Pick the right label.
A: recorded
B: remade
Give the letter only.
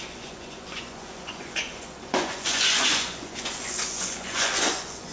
B